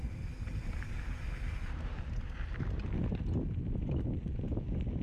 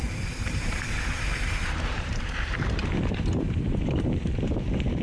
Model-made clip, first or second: second